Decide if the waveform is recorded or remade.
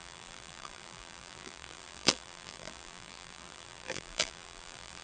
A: remade